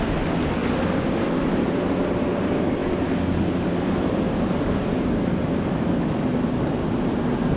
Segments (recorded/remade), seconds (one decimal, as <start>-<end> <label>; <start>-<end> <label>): 0.0-7.6 recorded